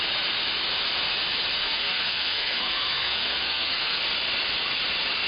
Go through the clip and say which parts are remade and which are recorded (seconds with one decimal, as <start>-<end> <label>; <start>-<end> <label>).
0.0-1.6 recorded; 1.6-4.0 remade; 4.0-5.3 recorded